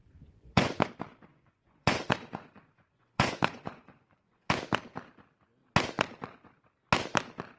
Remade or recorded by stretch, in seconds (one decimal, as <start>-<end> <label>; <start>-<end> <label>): 0.0-0.9 remade; 0.9-1.3 recorded; 1.3-4.5 remade; 4.5-7.6 recorded